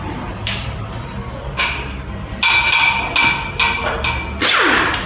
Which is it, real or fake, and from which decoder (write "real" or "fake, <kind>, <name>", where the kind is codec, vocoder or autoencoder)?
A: real